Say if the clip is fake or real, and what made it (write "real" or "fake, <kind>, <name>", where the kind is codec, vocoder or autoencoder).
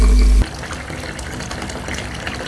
real